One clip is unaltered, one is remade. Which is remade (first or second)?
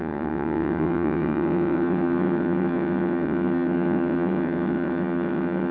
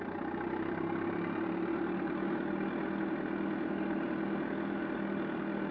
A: first